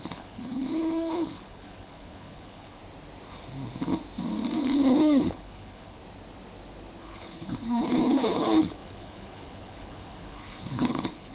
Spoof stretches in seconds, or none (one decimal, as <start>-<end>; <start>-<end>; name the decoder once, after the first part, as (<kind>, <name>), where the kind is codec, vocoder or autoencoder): 0.0-2.8 (codec, HILCodec); 4.6-6.0; 7.0-11.3